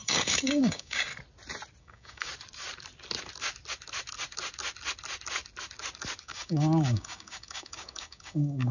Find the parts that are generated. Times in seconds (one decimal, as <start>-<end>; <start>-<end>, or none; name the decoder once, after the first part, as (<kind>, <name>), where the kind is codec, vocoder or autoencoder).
0.0-1.1 (codec, DAC); 1.8-2.3; 6.2-8.7